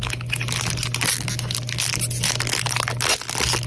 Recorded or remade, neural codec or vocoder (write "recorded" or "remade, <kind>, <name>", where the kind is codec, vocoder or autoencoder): recorded